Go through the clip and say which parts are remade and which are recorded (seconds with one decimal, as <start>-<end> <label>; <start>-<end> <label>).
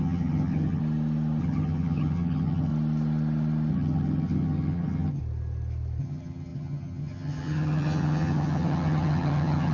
0.0-0.8 remade; 0.8-1.4 recorded; 1.4-2.7 remade; 2.7-3.7 recorded; 3.7-5.2 remade; 5.2-6.0 recorded; 6.0-9.7 remade